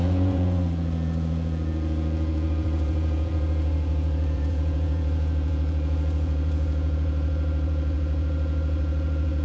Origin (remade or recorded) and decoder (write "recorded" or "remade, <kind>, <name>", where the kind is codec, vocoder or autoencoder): remade, vocoder, Vocos